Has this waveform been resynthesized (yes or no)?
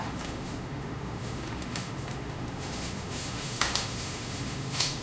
yes